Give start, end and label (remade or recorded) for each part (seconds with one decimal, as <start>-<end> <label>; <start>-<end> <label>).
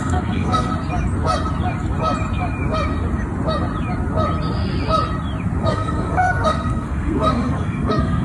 0.0-0.7 remade; 0.7-5.6 recorded; 5.6-8.2 remade